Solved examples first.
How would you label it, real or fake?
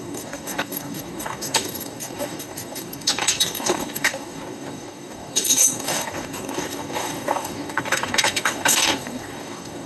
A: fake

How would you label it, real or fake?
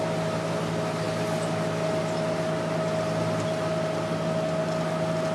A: real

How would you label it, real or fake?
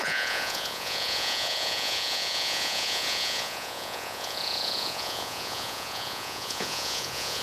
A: fake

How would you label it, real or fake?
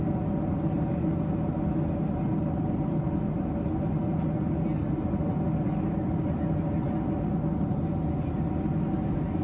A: real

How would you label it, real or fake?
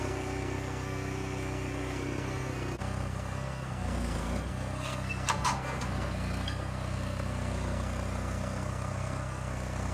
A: fake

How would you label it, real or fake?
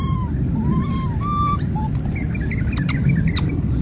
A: real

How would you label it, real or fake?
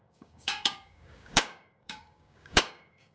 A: fake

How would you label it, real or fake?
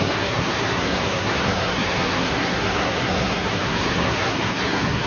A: fake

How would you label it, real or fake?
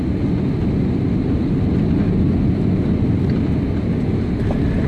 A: real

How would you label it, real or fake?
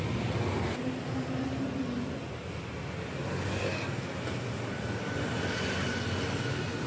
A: real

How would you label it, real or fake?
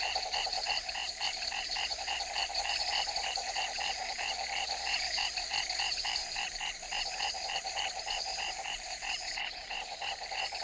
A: fake